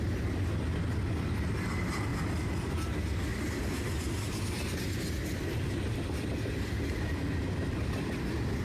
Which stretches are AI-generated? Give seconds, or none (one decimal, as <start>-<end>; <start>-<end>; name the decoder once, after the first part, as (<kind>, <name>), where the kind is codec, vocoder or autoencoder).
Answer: none